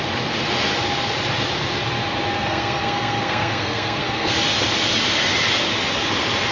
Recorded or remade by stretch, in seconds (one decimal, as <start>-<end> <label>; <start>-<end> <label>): 0.0-2.3 recorded; 2.3-4.3 remade; 4.3-6.5 recorded